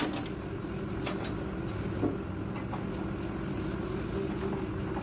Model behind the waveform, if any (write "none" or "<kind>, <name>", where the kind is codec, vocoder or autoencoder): none